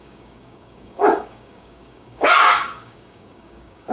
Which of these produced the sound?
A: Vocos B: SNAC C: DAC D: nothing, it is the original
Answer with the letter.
C